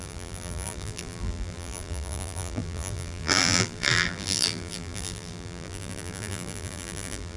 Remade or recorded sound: remade